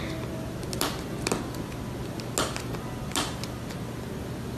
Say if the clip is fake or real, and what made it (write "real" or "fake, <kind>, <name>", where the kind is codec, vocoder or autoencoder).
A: real